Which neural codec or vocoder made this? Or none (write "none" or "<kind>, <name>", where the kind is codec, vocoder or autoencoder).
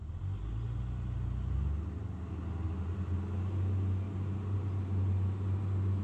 none